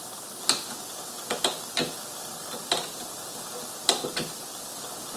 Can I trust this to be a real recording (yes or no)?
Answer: yes